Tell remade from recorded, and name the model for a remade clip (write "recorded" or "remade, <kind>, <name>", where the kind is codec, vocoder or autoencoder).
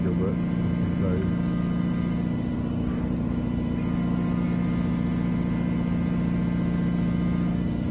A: recorded